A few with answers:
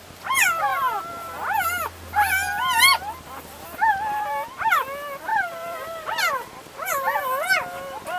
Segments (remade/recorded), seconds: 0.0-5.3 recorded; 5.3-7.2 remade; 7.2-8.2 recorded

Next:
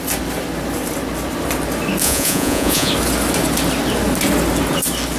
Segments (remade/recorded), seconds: 0.0-2.0 recorded; 2.0-2.9 remade; 2.9-5.2 recorded

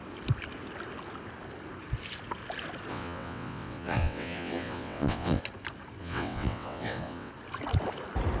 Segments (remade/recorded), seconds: 0.0-2.9 recorded; 2.9-5.4 remade; 5.4-6.0 recorded; 6.0-7.3 remade; 7.3-8.4 recorded